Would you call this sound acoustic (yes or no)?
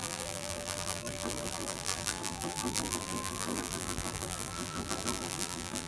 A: no